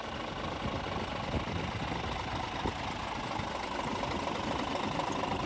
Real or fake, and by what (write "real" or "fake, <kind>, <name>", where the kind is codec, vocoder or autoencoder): real